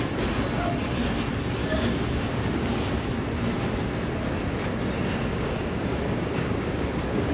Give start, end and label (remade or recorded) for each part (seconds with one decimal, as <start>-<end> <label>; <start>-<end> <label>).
0.0-1.6 recorded; 1.6-3.1 remade; 3.1-5.3 recorded; 5.3-7.3 remade